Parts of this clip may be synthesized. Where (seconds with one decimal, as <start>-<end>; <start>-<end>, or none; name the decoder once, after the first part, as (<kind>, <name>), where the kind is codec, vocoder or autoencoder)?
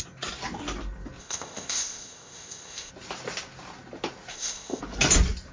1.2-2.9 (codec, ZipCodec); 4.3-4.8